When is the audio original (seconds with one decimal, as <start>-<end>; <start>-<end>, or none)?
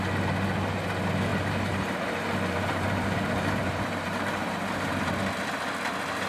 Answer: 0.0-1.3; 5.1-6.3